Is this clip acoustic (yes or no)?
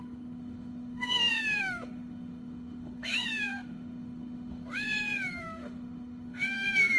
no